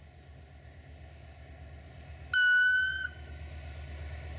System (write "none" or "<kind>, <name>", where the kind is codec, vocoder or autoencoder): none